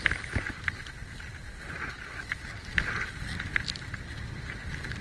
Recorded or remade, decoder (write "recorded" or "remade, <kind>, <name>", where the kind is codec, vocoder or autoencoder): recorded